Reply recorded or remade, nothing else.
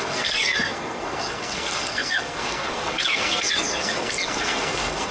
remade